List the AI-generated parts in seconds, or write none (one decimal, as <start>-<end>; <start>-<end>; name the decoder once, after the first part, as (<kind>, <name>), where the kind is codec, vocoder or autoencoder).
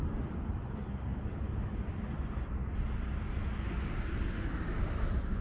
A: none